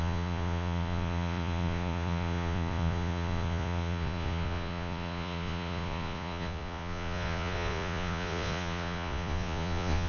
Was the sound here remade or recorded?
remade